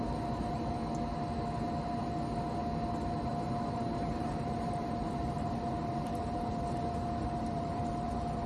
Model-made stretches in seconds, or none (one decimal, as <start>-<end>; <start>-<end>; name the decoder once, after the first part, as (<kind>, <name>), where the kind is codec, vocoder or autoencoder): 0.0-0.8 (vocoder, BigVGAN v2); 3.4-8.5